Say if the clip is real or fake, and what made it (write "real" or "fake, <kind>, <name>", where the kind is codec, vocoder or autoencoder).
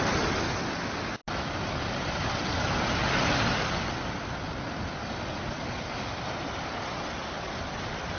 real